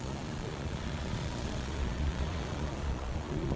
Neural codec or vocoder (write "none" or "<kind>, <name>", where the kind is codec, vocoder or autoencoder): vocoder, Vocos